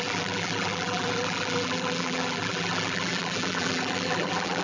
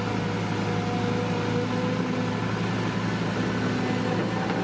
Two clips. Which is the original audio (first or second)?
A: second